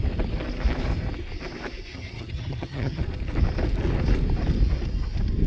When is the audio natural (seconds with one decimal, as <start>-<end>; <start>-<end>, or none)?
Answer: 0.0-1.9; 3.0-5.5